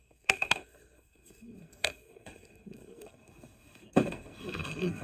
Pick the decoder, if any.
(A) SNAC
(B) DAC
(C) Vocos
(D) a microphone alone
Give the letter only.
A